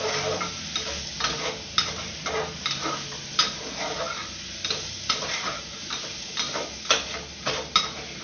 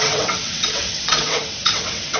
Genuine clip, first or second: first